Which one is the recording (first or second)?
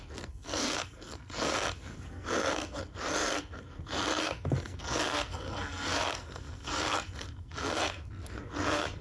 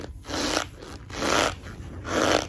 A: second